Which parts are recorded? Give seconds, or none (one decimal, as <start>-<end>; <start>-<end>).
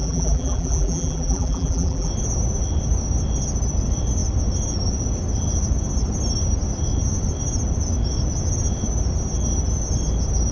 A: 2.1-10.5